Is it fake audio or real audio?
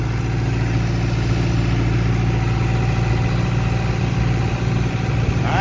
real